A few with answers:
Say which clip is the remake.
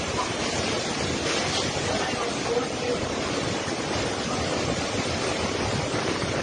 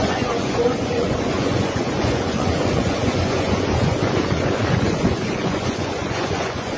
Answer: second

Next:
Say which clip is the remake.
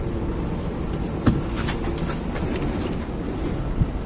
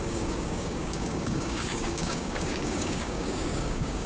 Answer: second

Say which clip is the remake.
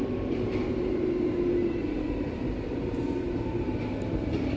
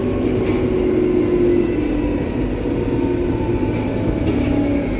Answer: first